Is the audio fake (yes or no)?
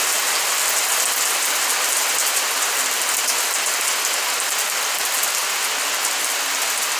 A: no